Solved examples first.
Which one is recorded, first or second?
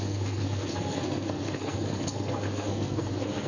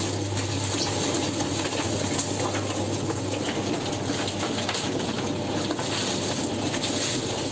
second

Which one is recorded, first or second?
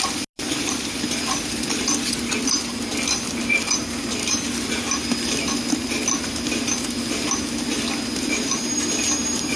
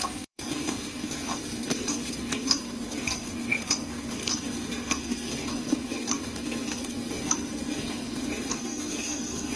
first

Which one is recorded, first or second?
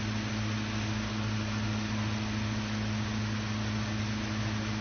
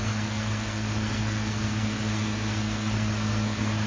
first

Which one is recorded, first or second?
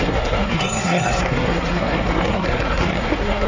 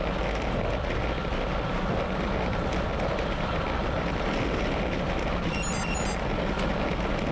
second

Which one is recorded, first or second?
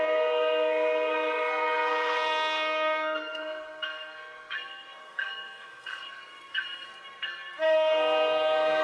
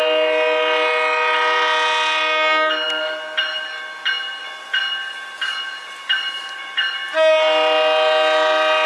second